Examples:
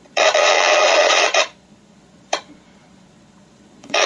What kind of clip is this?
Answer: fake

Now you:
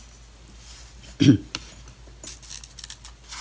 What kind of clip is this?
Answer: real